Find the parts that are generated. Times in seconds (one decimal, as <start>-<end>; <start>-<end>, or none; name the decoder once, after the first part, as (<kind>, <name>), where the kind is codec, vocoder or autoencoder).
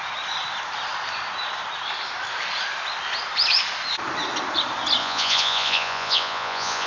5.0-6.9 (vocoder, Vocos)